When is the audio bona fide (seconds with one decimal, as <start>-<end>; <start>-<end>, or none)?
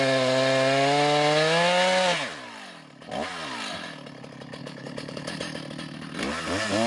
0.0-4.6; 5.4-6.9